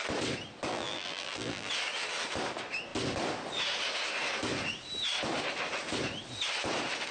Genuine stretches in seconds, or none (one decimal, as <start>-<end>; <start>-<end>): 0.0-0.7; 1.7-7.1